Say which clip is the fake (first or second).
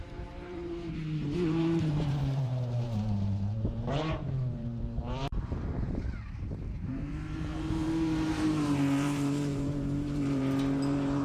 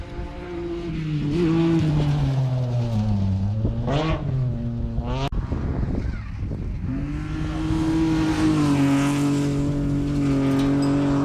first